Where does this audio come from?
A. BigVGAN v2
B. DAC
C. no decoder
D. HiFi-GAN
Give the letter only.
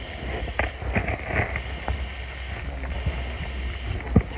C